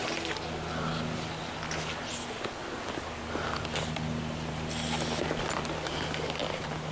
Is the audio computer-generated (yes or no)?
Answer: no